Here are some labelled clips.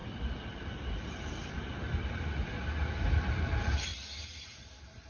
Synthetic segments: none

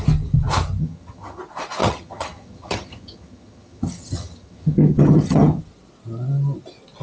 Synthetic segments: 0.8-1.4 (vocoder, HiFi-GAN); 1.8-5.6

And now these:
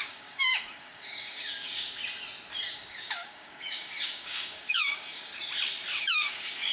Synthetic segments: 0.0-2.0 (codec, DAC); 2.7-5.3; 6.0-6.7

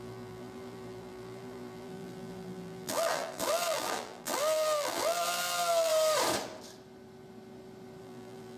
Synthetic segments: 0.0-5.9 (vocoder, BigVGAN v2); 8.0-8.6

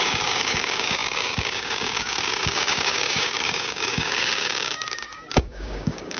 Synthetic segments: 0.0-6.2 (codec, DAC)

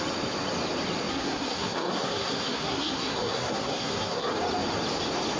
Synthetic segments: 1.1-4.3 (codec, SNAC)